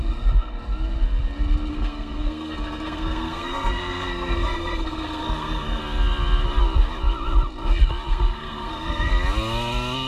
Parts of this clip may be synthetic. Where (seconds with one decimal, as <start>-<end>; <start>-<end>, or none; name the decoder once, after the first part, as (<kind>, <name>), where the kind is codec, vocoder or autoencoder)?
1.7-5.8 (codec, SNAC); 8.1-9.1